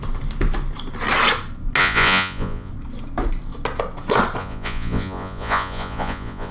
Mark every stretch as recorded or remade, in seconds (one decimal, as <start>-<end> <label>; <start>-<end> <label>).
0.0-1.8 recorded; 1.8-2.7 remade; 2.7-4.4 recorded; 4.4-6.5 remade